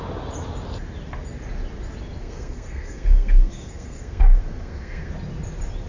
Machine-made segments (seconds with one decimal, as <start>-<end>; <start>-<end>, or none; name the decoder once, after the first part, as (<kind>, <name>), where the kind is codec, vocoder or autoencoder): 2.2-5.1 (codec, SNAC)